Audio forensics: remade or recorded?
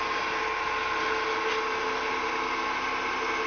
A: recorded